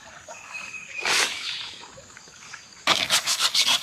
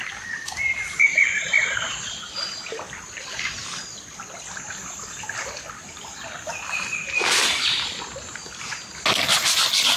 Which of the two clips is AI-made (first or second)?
first